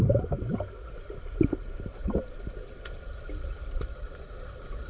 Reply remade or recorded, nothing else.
recorded